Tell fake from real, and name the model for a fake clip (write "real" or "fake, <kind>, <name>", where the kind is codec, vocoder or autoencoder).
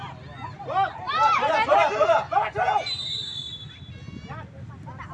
real